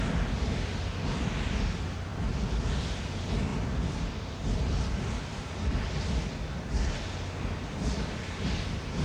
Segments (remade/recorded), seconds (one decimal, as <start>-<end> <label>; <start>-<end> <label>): 0.0-9.0 recorded